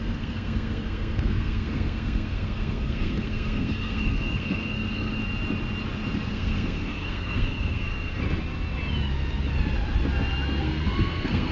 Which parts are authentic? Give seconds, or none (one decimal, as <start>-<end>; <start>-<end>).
5.2-6.3; 8.2-10.6